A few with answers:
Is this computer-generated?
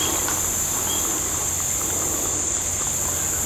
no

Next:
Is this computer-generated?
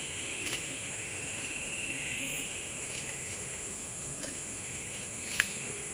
yes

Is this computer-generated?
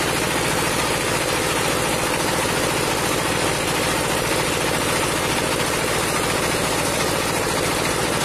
no